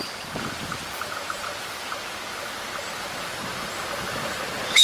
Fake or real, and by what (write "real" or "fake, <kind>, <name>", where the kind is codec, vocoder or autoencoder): fake, vocoder, BigVGAN v2